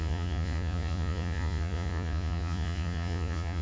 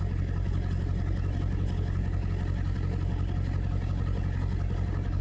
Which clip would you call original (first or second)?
second